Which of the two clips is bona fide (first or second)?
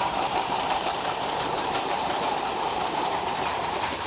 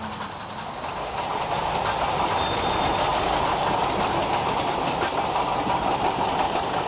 second